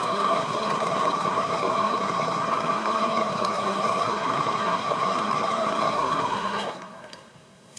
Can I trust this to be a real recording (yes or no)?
no